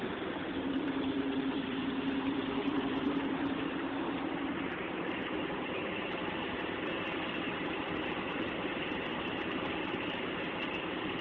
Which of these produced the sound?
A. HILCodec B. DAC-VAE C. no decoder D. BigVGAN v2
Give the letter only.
D